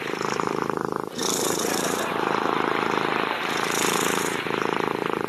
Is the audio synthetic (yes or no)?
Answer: yes